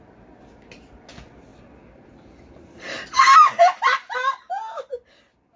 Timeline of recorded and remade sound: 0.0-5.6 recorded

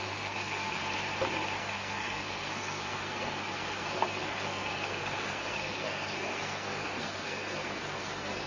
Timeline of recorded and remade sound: 0.0-0.8 remade; 0.8-1.6 recorded; 1.6-8.5 remade

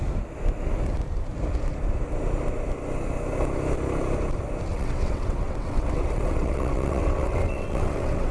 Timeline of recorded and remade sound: 0.0-4.7 recorded; 4.7-8.3 remade

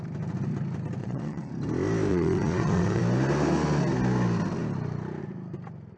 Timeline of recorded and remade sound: 0.0-1.0 recorded; 1.0-1.5 remade; 1.5-2.1 recorded; 2.1-3.0 remade; 3.0-6.0 recorded

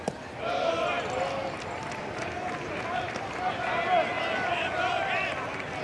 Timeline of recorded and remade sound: 0.0-5.8 recorded

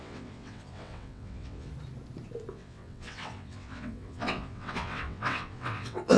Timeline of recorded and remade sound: 0.0-1.7 remade; 1.7-2.5 recorded; 2.5-6.2 remade